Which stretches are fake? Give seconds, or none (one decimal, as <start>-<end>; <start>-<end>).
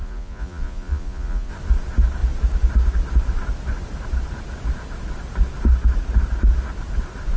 0.0-1.5